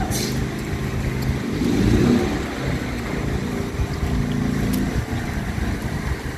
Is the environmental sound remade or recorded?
recorded